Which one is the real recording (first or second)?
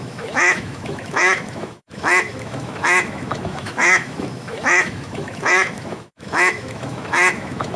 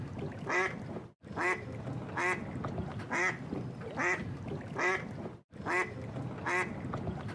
second